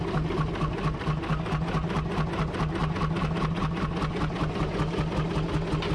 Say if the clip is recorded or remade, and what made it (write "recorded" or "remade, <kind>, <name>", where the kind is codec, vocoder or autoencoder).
recorded